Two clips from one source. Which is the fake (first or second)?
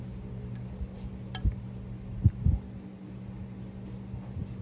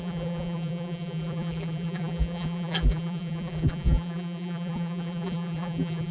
second